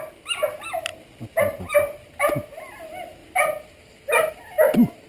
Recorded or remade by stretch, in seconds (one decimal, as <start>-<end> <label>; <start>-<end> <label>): 0.0-5.1 recorded